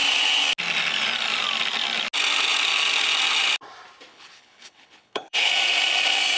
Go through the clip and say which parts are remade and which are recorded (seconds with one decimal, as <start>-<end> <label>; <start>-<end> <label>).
0.0-4.1 recorded; 4.1-5.5 remade; 5.5-6.4 recorded